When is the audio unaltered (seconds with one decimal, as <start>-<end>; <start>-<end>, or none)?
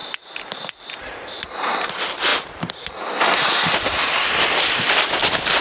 none